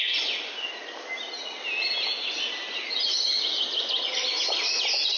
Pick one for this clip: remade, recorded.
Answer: recorded